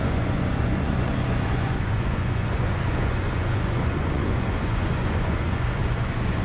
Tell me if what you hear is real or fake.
fake